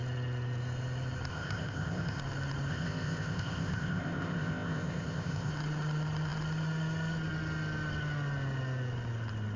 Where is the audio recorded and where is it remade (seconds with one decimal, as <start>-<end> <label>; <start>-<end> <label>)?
0.0-1.3 recorded; 1.3-2.2 remade; 2.2-2.7 recorded; 2.7-5.5 remade; 5.5-9.6 recorded